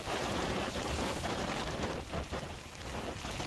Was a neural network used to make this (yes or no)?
no